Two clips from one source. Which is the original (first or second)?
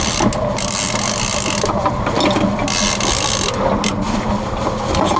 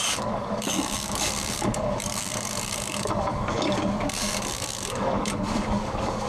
first